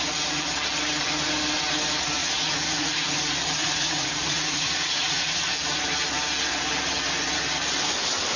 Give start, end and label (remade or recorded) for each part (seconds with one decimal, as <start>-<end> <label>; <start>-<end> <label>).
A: 0.0-2.2 recorded; 2.2-3.1 remade; 3.1-3.6 recorded; 3.6-5.5 remade; 5.5-8.4 recorded